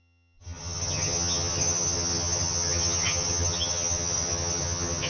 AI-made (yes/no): yes